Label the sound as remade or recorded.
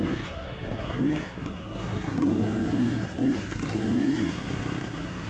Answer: remade